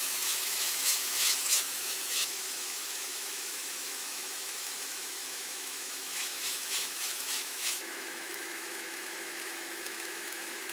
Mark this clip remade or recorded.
remade